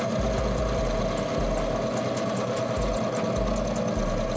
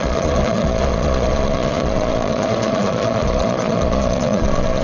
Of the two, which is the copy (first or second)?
second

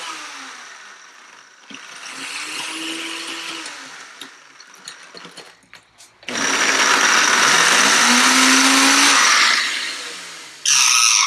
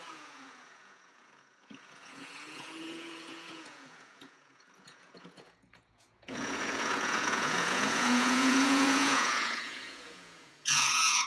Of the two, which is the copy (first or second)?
second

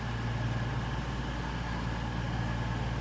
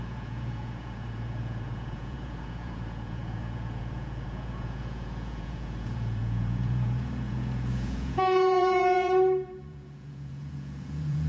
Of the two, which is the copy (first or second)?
second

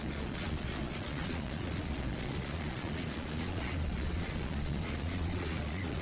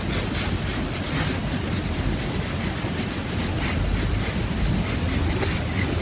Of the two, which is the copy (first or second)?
first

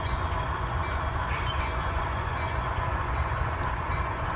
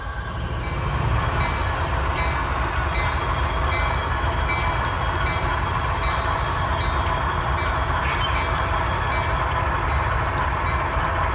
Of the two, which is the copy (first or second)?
first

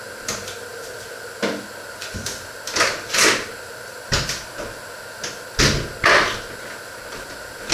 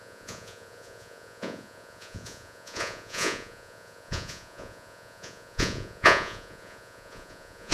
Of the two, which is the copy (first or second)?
second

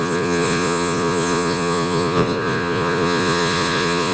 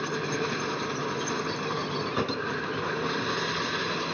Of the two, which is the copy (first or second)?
first